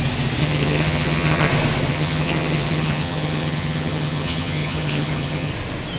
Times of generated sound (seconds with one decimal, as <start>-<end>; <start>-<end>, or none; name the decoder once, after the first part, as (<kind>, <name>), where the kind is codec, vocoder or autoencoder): 0.4-1.5 (vocoder, HiFi-GAN); 1.9-5.5